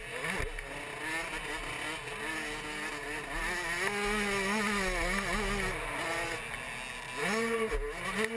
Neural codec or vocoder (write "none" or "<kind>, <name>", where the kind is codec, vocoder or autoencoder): none